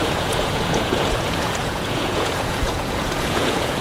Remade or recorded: remade